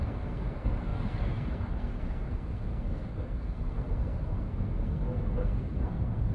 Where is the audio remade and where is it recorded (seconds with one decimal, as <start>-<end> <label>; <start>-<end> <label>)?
0.0-6.3 remade